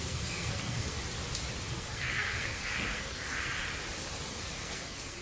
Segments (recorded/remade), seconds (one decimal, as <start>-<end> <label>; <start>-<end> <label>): 0.0-1.0 remade; 1.0-1.7 recorded; 1.7-3.6 remade; 3.6-4.3 recorded; 4.3-5.2 remade

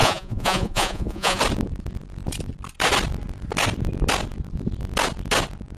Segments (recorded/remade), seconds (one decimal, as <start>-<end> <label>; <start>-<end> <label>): 0.0-1.4 remade; 1.4-5.8 recorded

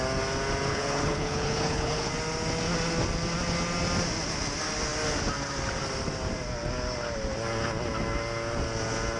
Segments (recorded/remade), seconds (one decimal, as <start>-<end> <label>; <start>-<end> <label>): 0.0-0.7 recorded; 0.7-2.1 remade; 2.1-9.2 recorded

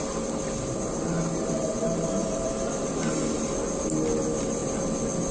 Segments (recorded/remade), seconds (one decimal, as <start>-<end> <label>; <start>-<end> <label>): 0.0-2.2 recorded; 2.2-2.7 remade; 2.7-4.6 recorded; 4.6-5.3 remade

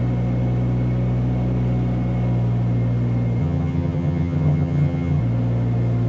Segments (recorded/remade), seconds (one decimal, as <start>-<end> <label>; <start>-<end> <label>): 0.0-3.4 recorded; 3.4-5.2 remade; 5.2-6.1 recorded